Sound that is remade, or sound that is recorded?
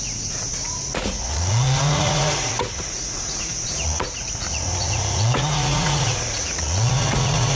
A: remade